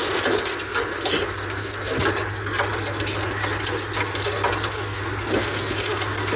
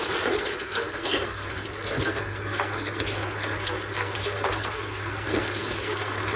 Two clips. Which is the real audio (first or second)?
first